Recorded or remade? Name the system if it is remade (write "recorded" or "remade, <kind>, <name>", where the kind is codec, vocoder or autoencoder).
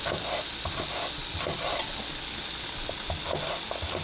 recorded